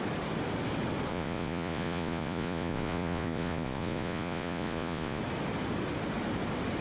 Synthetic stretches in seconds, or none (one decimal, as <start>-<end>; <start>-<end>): 1.1-5.2